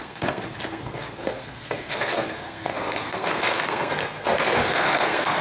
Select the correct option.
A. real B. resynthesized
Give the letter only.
B